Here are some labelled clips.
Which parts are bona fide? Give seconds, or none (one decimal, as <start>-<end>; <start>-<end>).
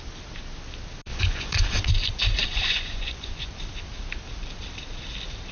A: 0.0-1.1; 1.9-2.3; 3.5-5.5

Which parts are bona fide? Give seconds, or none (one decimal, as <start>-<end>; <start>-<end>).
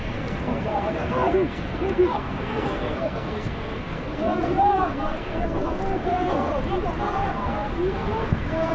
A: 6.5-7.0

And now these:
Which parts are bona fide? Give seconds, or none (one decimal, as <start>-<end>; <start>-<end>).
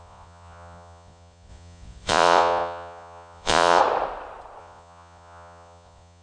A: 3.8-4.6